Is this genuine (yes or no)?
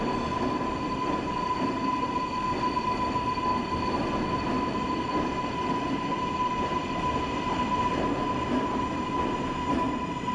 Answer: yes